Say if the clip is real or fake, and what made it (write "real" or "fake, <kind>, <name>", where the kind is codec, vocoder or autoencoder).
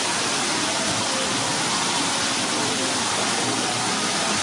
real